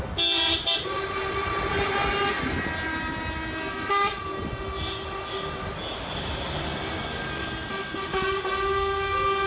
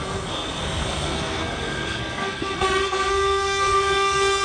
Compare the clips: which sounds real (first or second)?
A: first